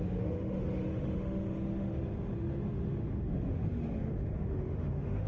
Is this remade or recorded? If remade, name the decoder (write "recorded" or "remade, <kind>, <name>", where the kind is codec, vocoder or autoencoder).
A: remade, autoencoder, DAC-VAE